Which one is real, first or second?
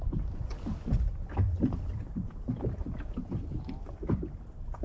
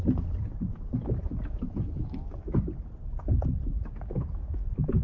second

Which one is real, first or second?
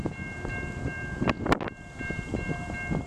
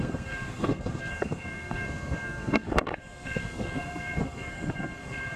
first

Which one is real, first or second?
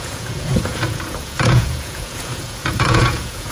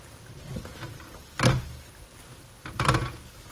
second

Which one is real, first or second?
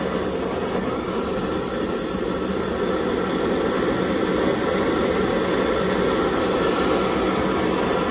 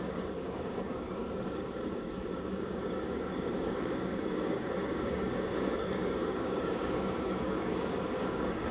first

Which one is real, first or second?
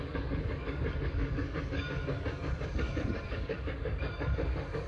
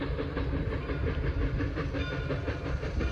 second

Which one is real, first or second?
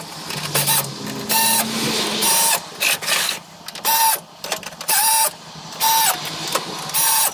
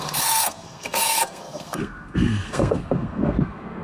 first